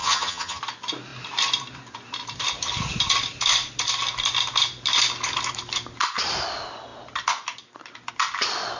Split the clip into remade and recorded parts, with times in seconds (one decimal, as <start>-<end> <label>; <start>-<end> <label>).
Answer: 0.0-0.6 remade; 0.6-8.8 recorded